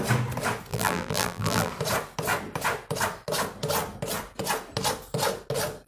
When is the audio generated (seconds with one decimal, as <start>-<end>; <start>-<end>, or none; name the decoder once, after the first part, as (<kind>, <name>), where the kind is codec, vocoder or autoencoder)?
0.7-1.7 (vocoder, BigVGAN v2)